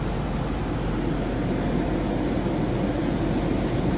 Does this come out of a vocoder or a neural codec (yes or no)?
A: no